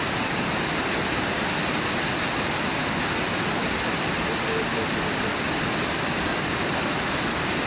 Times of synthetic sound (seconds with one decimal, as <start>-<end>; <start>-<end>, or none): none

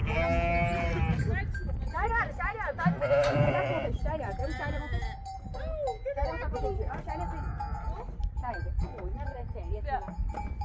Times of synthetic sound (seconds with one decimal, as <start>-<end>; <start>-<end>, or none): none